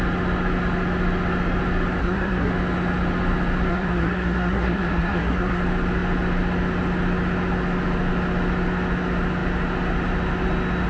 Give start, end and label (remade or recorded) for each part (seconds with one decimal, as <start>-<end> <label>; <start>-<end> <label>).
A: 0.0-2.0 recorded; 2.0-2.5 remade; 2.5-3.7 recorded; 3.7-5.6 remade; 5.6-10.9 recorded